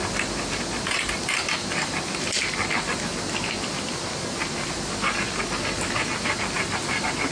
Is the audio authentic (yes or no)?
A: yes